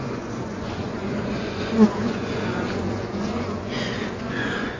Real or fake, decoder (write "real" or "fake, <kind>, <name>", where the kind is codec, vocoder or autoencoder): fake, vocoder, Vocos